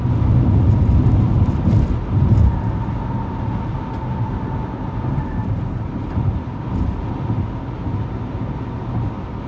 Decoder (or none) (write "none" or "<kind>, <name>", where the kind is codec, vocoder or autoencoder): none